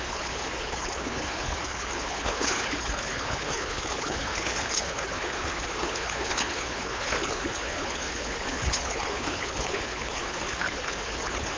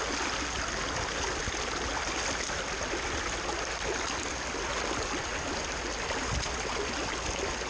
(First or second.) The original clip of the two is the second